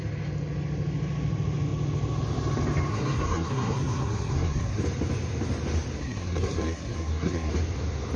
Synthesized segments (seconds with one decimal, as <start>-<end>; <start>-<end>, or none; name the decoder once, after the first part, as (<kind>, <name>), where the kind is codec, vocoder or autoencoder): 2.9-4.8 (codec, SNAC); 6.0-7.5